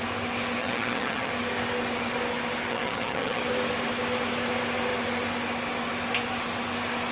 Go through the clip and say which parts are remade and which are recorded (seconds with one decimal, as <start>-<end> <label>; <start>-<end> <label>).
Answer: 0.0-0.6 recorded; 0.6-1.3 remade; 1.3-2.7 recorded; 2.7-3.4 remade; 3.4-7.1 recorded